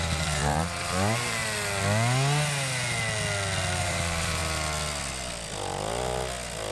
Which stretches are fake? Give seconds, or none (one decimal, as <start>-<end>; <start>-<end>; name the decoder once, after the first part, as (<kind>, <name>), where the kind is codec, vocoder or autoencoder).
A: 0.0-1.4 (vocoder, BigVGAN v2); 3.8-4.4